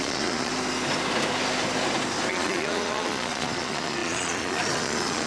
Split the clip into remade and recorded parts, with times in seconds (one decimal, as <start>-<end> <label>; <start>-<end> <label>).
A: 0.0-0.5 remade; 0.5-2.3 recorded; 2.3-5.3 remade